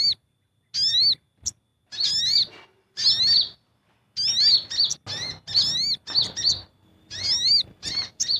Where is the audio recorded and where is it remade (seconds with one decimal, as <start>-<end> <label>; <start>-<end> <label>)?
0.0-8.4 recorded